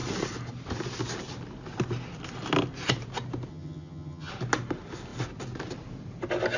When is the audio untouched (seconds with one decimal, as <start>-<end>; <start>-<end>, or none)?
0.0-3.5; 4.3-6.6